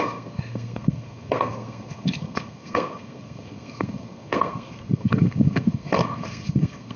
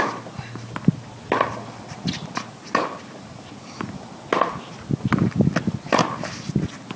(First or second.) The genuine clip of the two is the second